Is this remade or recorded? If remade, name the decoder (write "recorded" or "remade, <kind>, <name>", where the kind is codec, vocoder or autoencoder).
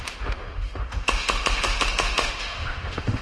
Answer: remade, autoencoder, DAC-VAE